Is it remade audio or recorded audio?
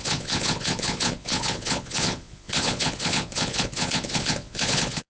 remade